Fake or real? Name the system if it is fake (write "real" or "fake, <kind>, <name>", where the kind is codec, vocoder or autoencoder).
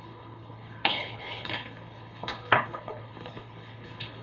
fake, codec, HILCodec